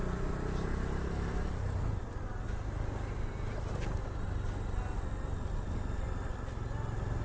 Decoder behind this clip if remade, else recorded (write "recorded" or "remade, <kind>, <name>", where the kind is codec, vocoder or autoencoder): recorded